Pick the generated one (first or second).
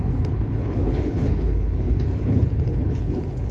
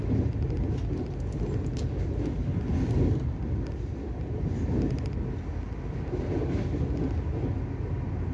first